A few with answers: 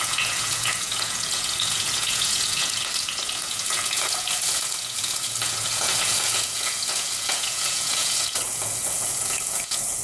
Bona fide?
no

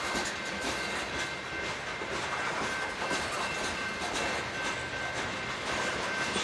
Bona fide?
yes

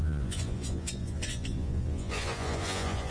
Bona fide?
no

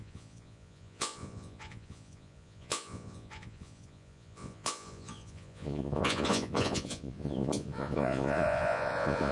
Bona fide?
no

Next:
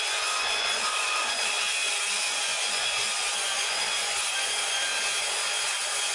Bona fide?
no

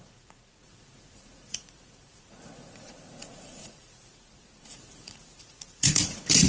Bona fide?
no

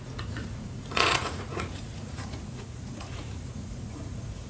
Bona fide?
no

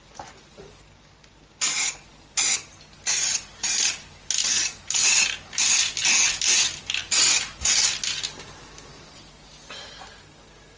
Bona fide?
yes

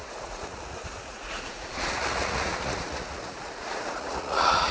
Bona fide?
no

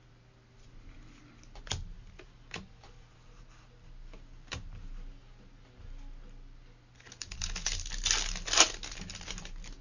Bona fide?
yes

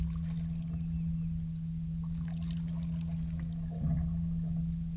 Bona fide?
yes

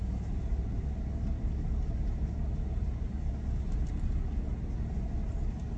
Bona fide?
yes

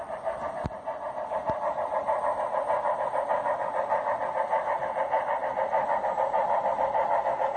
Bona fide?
yes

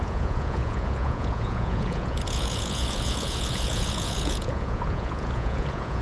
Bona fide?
no